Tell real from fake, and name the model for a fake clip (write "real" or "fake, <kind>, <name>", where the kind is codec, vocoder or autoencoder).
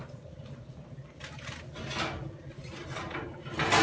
real